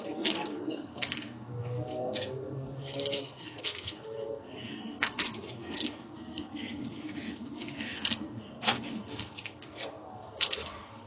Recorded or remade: remade